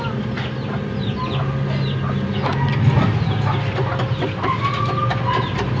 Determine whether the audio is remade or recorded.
recorded